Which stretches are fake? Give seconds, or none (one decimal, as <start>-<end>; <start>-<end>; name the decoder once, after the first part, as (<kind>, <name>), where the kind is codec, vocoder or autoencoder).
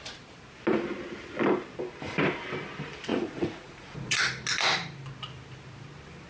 3.1-4.2 (vocoder, Vocos)